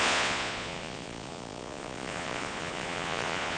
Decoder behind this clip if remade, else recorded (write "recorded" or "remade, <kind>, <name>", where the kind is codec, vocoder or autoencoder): remade, vocoder, Vocos